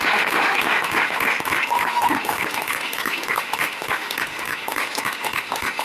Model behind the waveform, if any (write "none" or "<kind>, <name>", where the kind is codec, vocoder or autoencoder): autoencoder, DAC-VAE